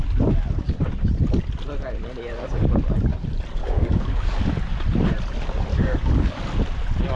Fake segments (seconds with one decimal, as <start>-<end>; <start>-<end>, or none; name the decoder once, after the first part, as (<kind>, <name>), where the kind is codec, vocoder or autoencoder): 3.6-4.4 (codec, DAC); 5.7-6.4